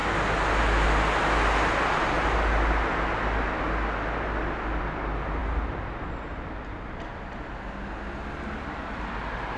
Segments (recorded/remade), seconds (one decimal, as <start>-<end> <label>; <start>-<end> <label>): 0.0-9.6 recorded

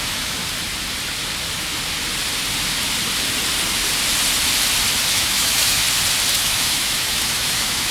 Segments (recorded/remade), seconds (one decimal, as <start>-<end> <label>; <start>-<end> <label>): 0.0-0.4 remade; 0.4-5.1 recorded; 5.1-5.8 remade; 5.8-6.4 recorded; 6.4-7.9 remade

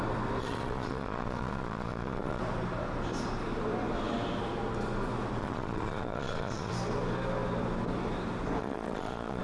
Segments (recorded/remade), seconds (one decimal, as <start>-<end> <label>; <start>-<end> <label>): 0.0-0.4 recorded; 0.4-2.4 remade; 2.4-5.4 recorded; 5.4-6.7 remade; 6.7-8.6 recorded; 8.6-9.4 remade

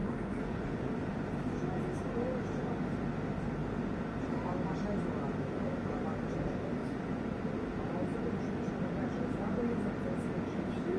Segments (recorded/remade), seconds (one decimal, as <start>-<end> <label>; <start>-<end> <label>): 0.0-0.9 remade; 0.9-6.8 recorded; 6.8-7.5 remade; 7.5-11.0 recorded

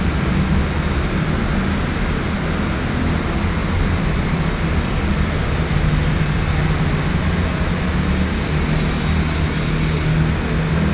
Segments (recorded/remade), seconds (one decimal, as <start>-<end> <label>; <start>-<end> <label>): 0.0-10.9 recorded

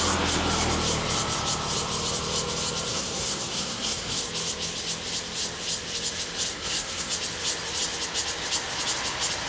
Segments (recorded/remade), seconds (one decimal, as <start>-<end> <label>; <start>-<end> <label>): 0.0-2.9 recorded; 2.9-4.2 remade; 4.2-6.5 recorded; 6.5-7.1 remade; 7.1-9.5 recorded

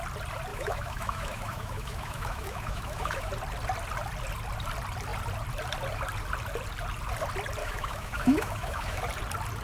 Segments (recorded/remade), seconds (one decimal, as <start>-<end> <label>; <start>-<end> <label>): 0.0-0.5 recorded; 0.5-3.3 remade; 3.3-7.6 recorded; 7.6-9.0 remade; 9.0-9.6 recorded